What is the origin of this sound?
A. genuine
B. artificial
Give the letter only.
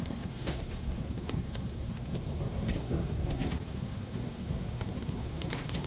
B